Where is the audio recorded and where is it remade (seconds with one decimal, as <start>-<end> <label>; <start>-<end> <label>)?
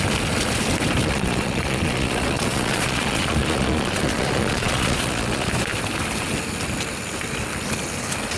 0.0-1.0 recorded; 1.0-5.5 remade; 5.5-8.4 recorded